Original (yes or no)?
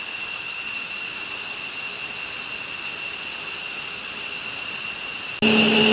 yes